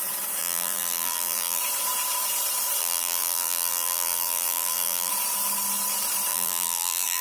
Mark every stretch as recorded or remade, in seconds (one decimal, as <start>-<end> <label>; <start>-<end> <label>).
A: 0.0-0.4 recorded; 0.4-1.6 remade; 1.6-2.8 recorded; 2.8-5.1 remade; 5.1-6.3 recorded; 6.3-7.2 remade